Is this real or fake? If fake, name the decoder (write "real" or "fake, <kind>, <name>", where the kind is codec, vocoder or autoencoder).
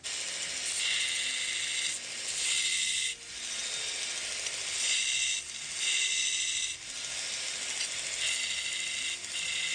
real